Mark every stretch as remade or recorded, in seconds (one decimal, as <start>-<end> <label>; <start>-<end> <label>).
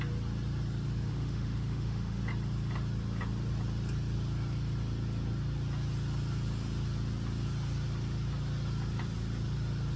0.0-1.1 recorded; 1.1-2.2 remade; 2.2-10.0 recorded